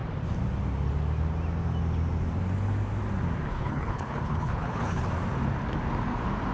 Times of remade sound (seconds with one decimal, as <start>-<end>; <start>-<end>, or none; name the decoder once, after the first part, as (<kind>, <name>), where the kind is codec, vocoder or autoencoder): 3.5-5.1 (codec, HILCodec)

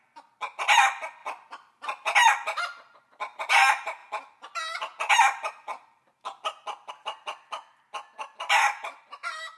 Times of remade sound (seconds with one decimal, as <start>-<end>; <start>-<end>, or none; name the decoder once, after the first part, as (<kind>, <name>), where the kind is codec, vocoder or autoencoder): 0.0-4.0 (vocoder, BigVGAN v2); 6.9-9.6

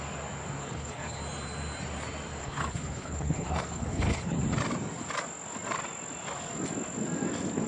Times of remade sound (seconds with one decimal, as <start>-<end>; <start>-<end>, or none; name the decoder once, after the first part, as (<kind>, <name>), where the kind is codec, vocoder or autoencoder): 0.6-1.2 (codec, HILCodec); 2.4-4.4